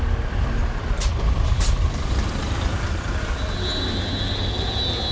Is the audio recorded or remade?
recorded